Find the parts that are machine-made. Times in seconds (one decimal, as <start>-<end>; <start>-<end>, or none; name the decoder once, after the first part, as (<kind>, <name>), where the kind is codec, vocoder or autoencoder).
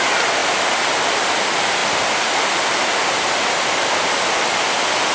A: none